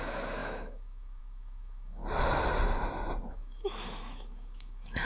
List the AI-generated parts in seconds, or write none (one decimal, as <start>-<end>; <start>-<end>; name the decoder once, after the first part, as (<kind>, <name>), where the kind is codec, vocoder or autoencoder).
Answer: 0.0-2.0 (autoencoder, DAC-VAE); 3.3-5.0